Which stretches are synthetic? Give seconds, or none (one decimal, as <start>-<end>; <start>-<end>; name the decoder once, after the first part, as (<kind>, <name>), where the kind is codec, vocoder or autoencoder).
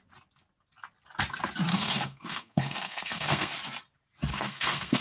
1.7-3.5 (codec, SNAC); 4.3-5.0